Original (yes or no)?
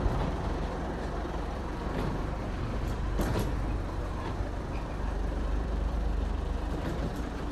no